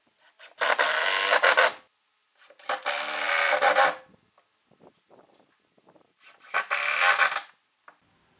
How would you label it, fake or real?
real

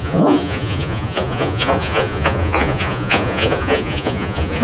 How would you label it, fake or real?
fake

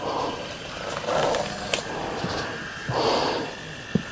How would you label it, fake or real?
real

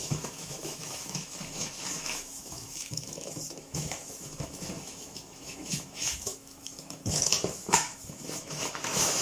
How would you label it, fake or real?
fake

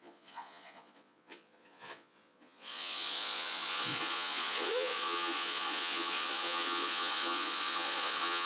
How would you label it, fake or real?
fake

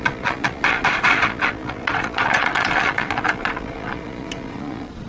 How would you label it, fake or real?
fake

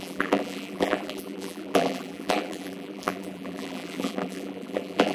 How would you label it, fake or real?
fake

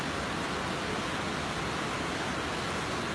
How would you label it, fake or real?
real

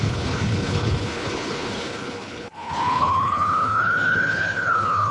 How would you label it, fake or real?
fake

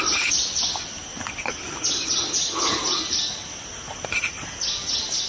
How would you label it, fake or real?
real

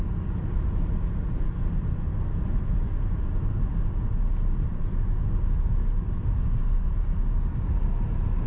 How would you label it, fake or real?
real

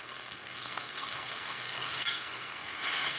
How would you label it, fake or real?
fake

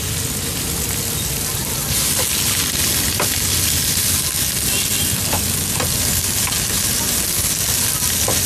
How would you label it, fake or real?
real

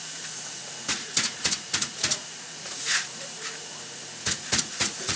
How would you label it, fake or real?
fake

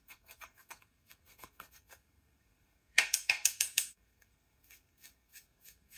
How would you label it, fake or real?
fake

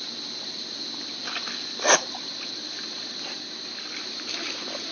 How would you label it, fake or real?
real